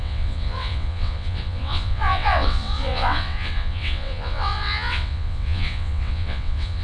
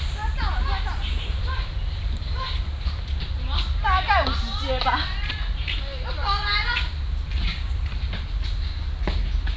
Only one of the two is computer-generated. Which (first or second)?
first